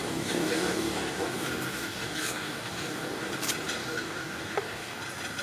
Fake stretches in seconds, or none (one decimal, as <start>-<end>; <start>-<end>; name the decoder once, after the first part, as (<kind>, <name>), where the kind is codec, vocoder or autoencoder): 0.0-3.2 (codec, DAC); 3.8-5.0